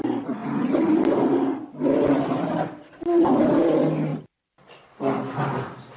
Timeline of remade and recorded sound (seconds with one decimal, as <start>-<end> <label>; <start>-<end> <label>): 0.0-4.1 remade; 4.1-5.6 recorded; 5.6-6.0 remade